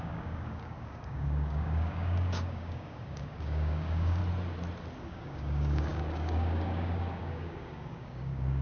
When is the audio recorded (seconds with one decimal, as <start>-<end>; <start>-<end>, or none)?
4.2-5.0